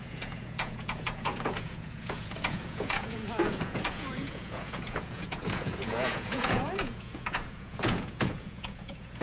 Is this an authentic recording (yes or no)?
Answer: no